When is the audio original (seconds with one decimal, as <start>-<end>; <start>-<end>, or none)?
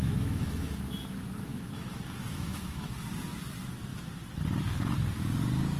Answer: 0.8-1.5; 2.9-5.8